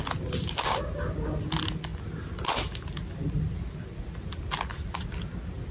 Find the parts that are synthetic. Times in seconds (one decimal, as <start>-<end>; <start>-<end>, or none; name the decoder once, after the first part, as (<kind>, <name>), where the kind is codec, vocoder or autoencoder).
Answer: none